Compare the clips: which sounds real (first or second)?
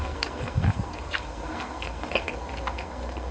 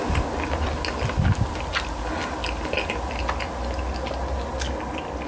second